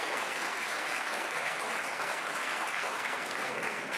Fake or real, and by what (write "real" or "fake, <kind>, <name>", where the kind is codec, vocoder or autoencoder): fake, codec, SNAC